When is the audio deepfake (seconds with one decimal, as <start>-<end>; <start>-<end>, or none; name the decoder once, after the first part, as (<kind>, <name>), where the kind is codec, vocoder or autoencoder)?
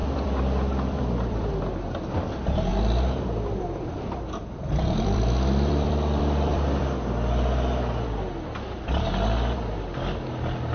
0.0-1.5 (vocoder, BigVGAN v2); 2.7-6.8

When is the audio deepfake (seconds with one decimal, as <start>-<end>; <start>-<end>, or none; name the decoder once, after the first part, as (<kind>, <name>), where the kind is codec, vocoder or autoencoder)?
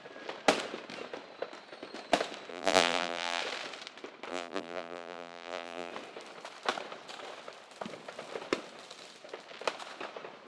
2.5-3.4 (vocoder, BigVGAN v2); 4.3-5.9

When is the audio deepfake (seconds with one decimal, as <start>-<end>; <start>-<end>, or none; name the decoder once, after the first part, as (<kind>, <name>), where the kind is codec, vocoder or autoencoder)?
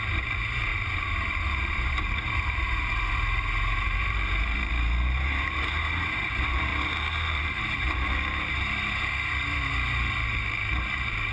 0.0-11.3 (vocoder, BigVGAN v2)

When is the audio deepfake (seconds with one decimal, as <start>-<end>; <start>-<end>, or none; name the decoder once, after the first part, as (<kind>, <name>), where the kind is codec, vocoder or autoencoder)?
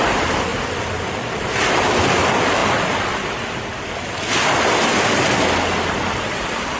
0.0-6.8 (vocoder, BigVGAN v2)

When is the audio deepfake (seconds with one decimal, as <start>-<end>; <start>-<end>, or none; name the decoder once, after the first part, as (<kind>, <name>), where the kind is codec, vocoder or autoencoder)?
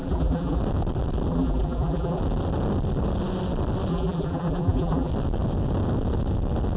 0.0-0.6 (vocoder, BigVGAN v2); 1.3-2.2; 3.9-5.1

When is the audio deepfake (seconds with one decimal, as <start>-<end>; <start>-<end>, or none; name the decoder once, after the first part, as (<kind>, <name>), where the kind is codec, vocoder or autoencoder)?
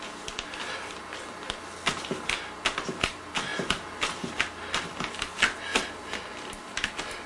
3.5-4.4 (vocoder, BigVGAN v2)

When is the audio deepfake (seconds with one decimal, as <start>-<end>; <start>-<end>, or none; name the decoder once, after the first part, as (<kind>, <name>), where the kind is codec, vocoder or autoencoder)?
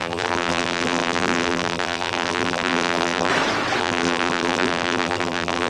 0.0-3.3 (vocoder, BigVGAN v2); 3.8-5.7